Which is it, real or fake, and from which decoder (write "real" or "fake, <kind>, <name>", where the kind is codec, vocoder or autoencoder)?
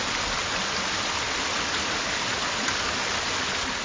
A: real